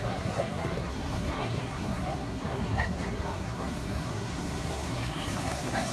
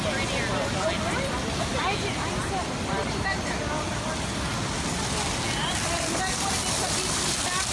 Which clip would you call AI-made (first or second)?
first